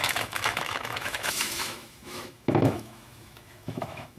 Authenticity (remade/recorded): remade